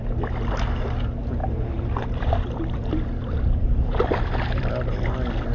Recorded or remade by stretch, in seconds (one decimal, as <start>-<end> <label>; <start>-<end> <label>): 0.0-1.4 recorded; 1.4-4.7 remade; 4.7-5.5 recorded